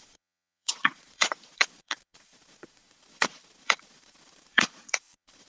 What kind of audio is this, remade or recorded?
remade